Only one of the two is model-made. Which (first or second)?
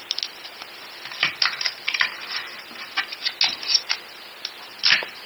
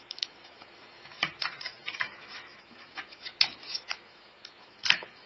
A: second